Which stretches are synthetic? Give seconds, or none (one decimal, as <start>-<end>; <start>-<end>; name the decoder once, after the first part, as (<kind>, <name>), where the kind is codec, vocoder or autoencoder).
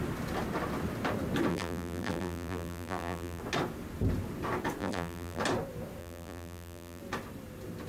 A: 1.5-3.4 (vocoder, BigVGAN v2); 4.8-5.4; 6.0-7.0